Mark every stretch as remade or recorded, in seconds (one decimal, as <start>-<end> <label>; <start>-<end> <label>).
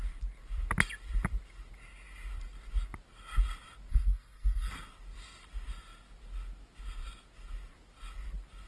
0.0-3.9 recorded; 3.9-4.7 remade; 4.7-8.7 recorded